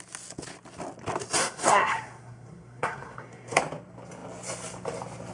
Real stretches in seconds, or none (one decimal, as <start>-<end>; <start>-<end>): 0.0-1.4; 3.6-5.3